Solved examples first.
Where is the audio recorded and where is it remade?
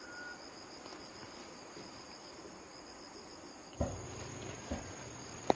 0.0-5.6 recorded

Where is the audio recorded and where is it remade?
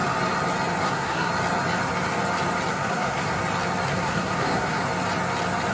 0.0-0.8 recorded; 0.8-1.3 remade; 1.3-2.7 recorded; 2.7-3.4 remade; 3.4-3.9 recorded; 3.9-4.8 remade; 4.8-5.7 recorded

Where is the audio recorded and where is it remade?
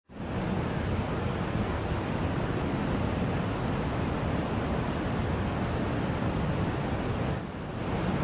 0.0-1.2 recorded; 1.2-1.8 remade; 1.8-8.2 recorded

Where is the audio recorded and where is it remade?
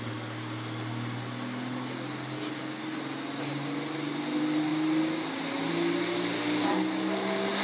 0.0-7.6 recorded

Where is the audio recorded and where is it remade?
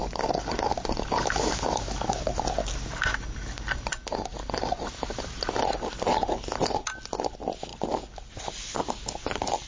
0.0-9.7 recorded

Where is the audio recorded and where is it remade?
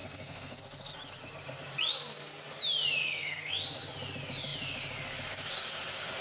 0.0-0.6 remade; 0.6-3.0 recorded; 3.0-3.5 remade; 3.5-6.2 recorded